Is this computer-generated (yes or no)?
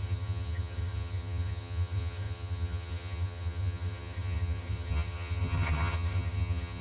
yes